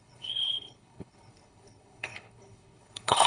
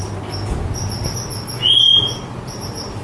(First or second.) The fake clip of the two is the first